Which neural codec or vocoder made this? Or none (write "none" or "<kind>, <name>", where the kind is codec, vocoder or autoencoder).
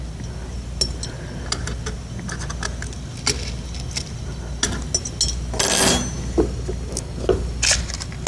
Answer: none